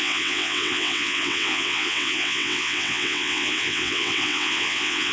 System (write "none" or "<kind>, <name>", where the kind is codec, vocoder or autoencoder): vocoder, WaveNeXt